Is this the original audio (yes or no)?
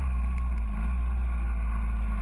yes